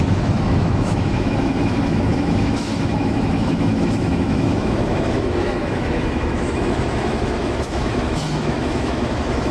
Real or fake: fake